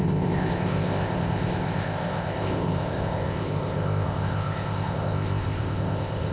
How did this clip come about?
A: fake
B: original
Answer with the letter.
A